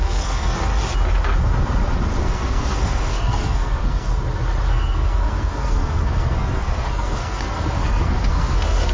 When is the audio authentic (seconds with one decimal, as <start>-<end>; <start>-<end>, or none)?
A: 0.7-2.2; 4.1-4.7